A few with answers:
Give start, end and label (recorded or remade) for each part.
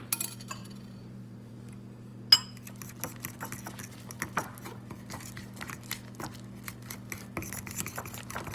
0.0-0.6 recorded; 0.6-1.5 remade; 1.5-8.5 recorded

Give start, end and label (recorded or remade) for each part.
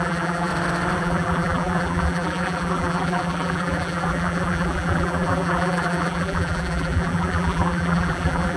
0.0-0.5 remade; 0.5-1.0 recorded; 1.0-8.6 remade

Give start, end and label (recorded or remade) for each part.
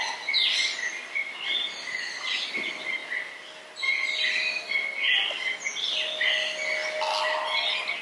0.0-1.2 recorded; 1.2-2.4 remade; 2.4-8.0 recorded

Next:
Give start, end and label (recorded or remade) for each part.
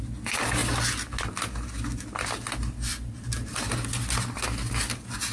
0.0-2.9 recorded; 2.9-3.9 remade; 3.9-5.3 recorded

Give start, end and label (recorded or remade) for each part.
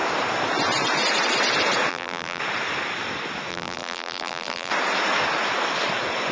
0.0-1.9 recorded; 1.9-2.4 remade; 2.4-3.5 recorded; 3.5-4.7 remade; 4.7-6.3 recorded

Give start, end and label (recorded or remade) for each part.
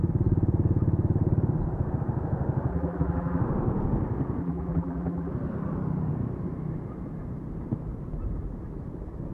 0.0-2.7 recorded; 2.7-3.4 remade; 3.4-4.4 recorded; 4.4-5.3 remade; 5.3-9.3 recorded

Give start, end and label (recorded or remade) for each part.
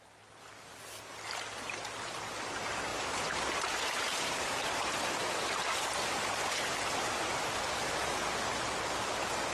0.0-2.9 recorded; 2.9-7.6 remade; 7.6-9.5 recorded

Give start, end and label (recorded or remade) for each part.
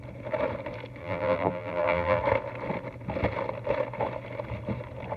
0.0-1.0 recorded; 1.0-2.2 remade; 2.2-5.2 recorded